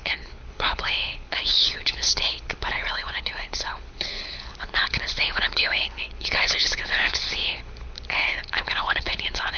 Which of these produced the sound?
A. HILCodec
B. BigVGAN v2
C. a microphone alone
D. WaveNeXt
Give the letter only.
A